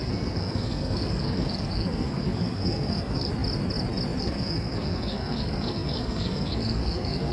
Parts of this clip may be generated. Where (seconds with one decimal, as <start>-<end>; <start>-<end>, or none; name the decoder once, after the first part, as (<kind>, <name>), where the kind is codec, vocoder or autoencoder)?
0.0-3.3 (codec, SNAC); 4.2-7.3